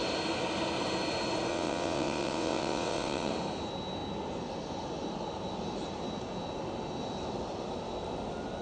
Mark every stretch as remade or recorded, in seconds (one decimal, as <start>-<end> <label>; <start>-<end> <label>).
0.0-1.5 recorded; 1.5-3.3 remade; 3.3-8.6 recorded